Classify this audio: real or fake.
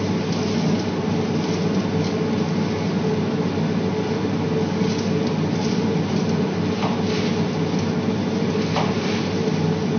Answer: real